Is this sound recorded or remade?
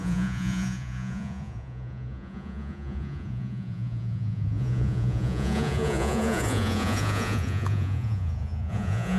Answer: remade